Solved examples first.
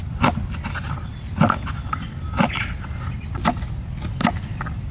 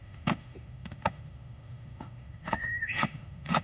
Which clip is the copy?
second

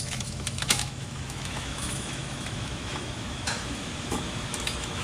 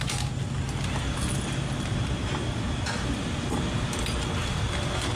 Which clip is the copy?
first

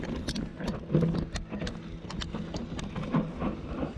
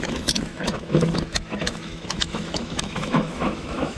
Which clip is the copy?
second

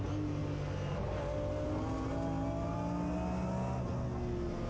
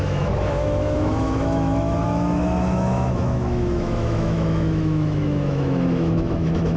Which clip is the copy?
second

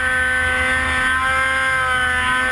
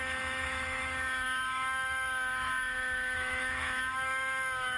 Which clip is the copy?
second